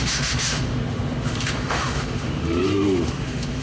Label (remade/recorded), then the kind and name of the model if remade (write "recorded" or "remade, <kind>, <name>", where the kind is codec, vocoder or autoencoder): remade, autoencoder, DAC-VAE